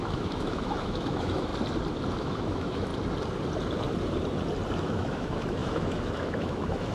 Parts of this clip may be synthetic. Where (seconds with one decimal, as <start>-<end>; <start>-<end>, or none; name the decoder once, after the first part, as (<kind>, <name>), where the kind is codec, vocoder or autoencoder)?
0.0-1.5 (autoencoder, DAC-VAE); 2.2-2.9; 4.8-6.9